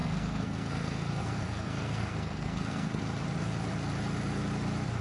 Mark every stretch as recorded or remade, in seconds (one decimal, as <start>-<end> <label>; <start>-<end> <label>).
0.0-3.0 remade; 3.0-5.0 recorded